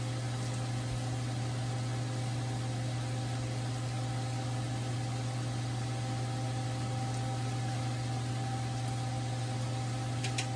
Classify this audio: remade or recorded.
recorded